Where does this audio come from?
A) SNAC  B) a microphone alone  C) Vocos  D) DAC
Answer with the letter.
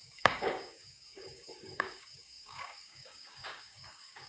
D